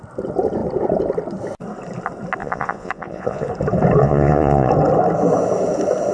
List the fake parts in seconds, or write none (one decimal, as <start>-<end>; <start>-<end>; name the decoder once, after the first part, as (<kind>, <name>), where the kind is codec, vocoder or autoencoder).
2.4-3.5 (vocoder, Vocos); 4.0-4.7